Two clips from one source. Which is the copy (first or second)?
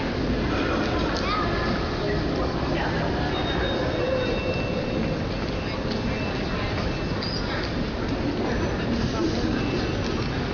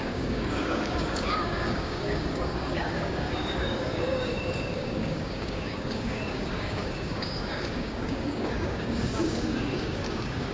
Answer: second